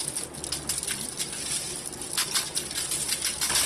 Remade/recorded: recorded